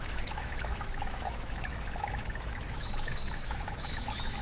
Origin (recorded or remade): remade